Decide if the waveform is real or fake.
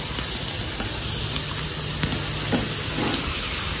real